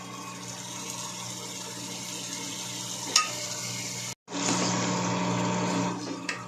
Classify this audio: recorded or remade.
recorded